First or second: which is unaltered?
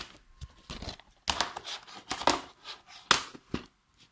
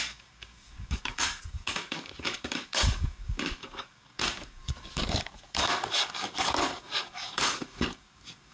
first